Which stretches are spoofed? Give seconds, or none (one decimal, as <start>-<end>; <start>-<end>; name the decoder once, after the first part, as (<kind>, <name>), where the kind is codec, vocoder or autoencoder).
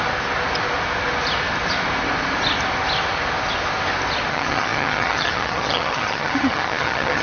4.3-7.2 (vocoder, HiFi-GAN)